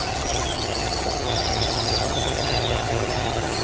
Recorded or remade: remade